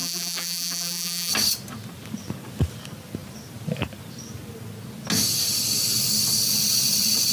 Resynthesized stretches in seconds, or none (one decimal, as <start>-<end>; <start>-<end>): 0.0-1.3